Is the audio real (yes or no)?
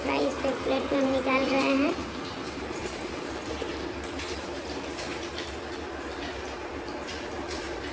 no